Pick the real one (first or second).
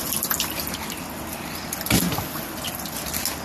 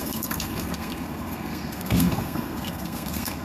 first